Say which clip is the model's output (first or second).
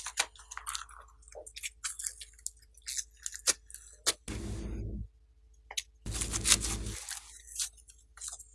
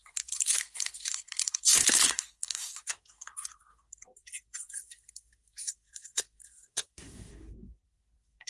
second